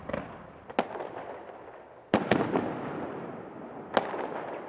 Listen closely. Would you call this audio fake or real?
real